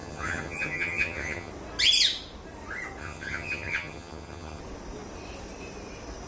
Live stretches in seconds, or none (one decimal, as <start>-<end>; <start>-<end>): 1.5-3.0; 4.6-6.3